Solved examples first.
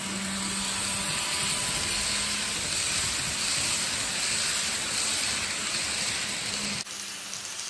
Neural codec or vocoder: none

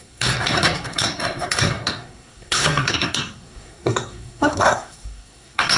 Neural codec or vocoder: codec, SNAC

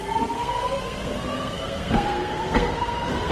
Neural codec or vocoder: codec, SNAC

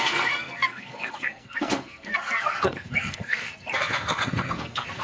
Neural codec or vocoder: codec, SNAC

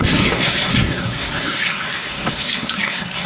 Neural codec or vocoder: codec, SNAC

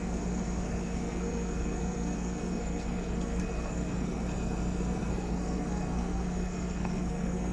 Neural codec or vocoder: codec, SNAC